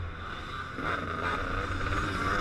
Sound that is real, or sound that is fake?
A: real